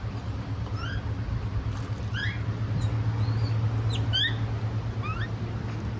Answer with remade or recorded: recorded